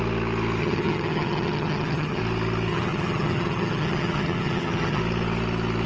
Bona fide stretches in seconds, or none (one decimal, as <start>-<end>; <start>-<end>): 0.0-0.6; 2.2-2.7; 5.0-5.9